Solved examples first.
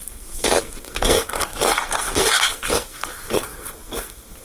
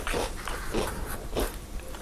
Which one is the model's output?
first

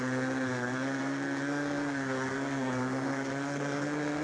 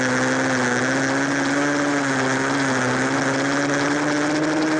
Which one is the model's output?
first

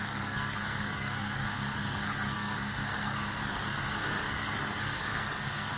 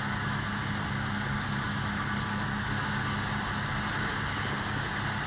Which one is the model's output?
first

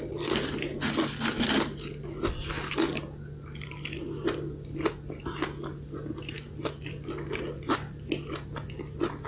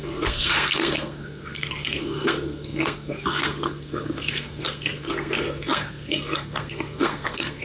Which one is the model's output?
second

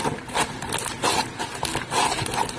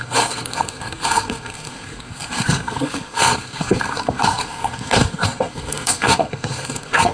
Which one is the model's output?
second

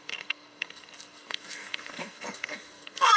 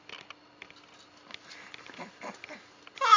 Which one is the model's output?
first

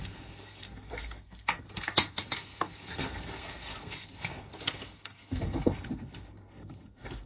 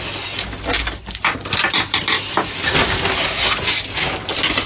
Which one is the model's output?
first